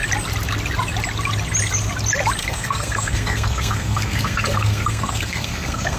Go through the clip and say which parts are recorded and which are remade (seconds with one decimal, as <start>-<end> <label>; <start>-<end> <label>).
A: 0.0-2.4 recorded; 2.4-6.0 remade